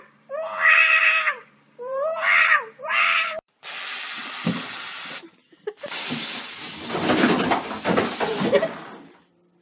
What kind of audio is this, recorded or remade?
remade